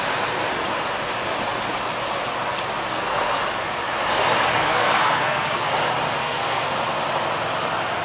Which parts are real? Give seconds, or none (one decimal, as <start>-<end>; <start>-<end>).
0.0-2.9; 3.4-4.6; 5.7-6.2; 6.7-8.0

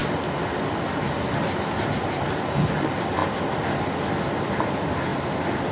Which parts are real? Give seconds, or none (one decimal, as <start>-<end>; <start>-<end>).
0.0-5.7

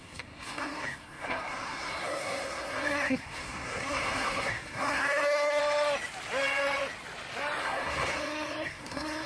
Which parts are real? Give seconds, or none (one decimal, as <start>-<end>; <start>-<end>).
5.6-7.6

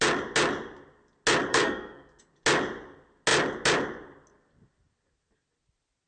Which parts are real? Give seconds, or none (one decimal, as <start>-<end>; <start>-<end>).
0.0-1.5; 2.2-6.1

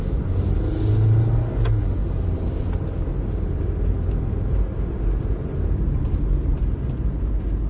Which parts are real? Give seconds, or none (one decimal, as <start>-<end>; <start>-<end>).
0.0-7.7

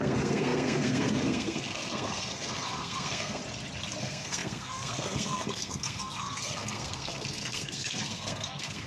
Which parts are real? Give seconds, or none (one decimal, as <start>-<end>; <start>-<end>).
3.4-4.0

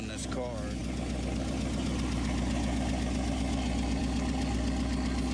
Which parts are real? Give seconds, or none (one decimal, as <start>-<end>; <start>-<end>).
0.0-5.3